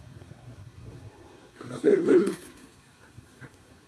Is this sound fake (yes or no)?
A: yes